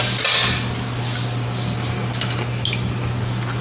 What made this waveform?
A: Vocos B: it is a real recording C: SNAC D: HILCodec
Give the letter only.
B